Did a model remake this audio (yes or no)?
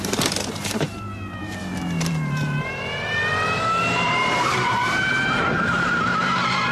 yes